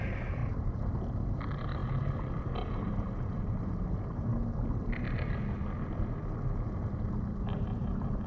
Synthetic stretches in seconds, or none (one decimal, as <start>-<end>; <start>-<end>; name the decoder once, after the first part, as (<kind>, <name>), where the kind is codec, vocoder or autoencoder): 0.0-1.8 (vocoder, BigVGAN v2); 2.8-4.3; 7.5-8.3